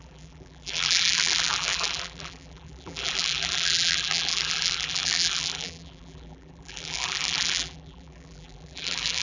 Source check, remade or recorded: remade